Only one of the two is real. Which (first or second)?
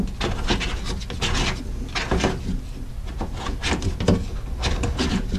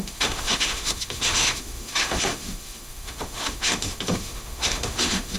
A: first